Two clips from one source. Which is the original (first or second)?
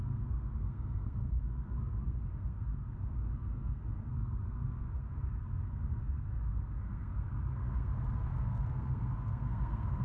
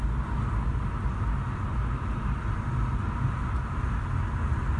second